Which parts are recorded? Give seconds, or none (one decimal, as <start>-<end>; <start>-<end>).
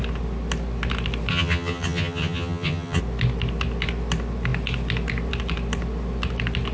0.0-1.3; 3.0-6.7